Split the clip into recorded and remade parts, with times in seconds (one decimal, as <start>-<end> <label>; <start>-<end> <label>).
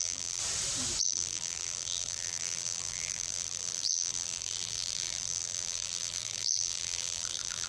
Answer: 0.0-0.4 remade; 0.4-1.0 recorded; 1.0-7.7 remade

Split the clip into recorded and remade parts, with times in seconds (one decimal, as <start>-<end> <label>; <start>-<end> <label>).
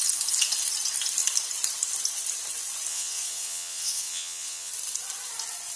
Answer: 0.0-2.9 recorded; 2.9-4.7 remade; 4.7-5.8 recorded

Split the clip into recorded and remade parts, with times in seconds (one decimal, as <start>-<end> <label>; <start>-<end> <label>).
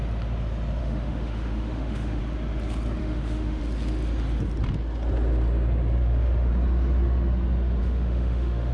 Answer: 0.0-0.8 recorded; 0.8-2.2 remade; 2.2-3.0 recorded; 3.0-3.6 remade; 3.6-6.0 recorded; 6.0-6.5 remade; 6.5-7.8 recorded; 7.8-8.7 remade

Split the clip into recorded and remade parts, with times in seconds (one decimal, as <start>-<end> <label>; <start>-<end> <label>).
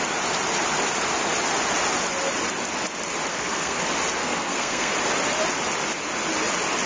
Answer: 0.0-3.3 recorded; 3.3-3.8 remade; 3.8-4.2 recorded; 4.2-4.9 remade; 4.9-6.9 recorded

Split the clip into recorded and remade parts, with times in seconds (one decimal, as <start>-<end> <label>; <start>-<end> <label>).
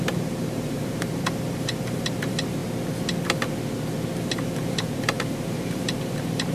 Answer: 0.0-2.6 remade; 2.6-4.3 recorded; 4.3-6.5 remade